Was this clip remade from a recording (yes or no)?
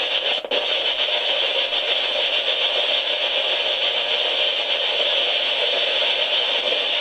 no